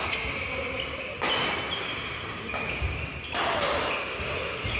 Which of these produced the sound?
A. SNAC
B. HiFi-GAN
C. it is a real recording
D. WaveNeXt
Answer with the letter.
C